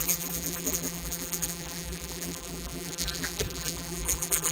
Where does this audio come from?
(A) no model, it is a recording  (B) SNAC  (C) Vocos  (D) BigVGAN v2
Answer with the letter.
D